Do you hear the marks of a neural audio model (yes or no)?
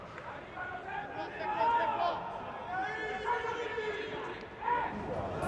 no